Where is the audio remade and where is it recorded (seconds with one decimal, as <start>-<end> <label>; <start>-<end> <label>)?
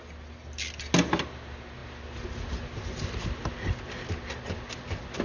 0.0-5.2 recorded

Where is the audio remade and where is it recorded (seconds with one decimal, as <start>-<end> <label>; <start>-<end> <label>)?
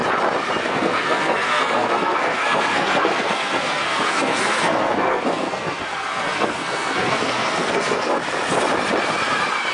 0.0-0.6 recorded; 0.6-8.2 remade; 8.2-9.7 recorded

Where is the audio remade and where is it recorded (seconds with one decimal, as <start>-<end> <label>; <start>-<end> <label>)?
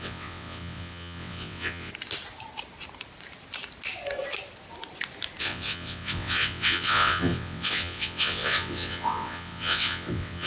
0.0-1.9 remade; 1.9-5.4 recorded; 5.4-10.5 remade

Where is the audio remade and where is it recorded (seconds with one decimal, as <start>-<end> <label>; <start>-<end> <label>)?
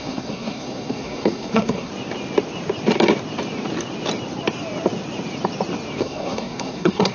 0.0-1.9 remade; 1.9-6.0 recorded; 6.0-7.1 remade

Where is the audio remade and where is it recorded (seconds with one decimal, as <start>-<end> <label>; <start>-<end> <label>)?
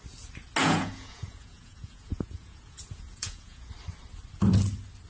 0.0-0.6 recorded; 0.6-3.7 remade; 3.7-5.1 recorded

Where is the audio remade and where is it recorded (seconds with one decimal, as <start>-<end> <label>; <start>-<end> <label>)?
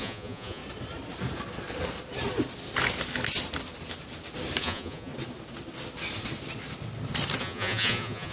0.0-0.6 remade; 0.6-4.6 recorded; 4.6-5.1 remade; 5.1-7.4 recorded; 7.4-8.3 remade